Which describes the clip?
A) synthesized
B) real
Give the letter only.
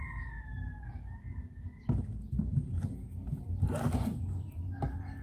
B